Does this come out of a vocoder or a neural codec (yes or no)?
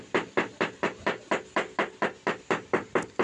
no